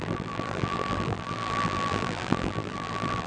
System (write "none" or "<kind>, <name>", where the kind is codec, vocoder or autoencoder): vocoder, BigVGAN v2